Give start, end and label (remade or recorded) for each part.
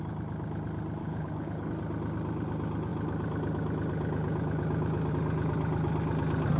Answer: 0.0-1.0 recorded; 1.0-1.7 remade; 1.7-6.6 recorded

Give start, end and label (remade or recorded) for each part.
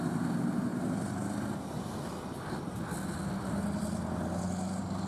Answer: 0.0-5.1 recorded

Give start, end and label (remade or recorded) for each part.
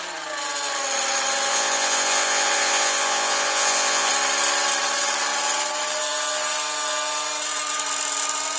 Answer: 0.0-1.5 recorded; 1.5-4.1 remade; 4.1-8.6 recorded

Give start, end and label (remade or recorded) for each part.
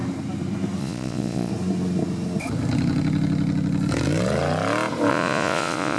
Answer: 0.0-0.8 recorded; 0.8-1.5 remade; 1.5-5.1 recorded; 5.1-6.0 remade